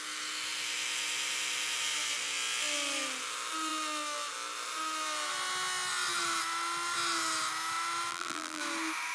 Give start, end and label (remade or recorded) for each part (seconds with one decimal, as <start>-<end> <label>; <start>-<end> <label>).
0.0-8.1 recorded; 8.1-8.6 remade; 8.6-9.1 recorded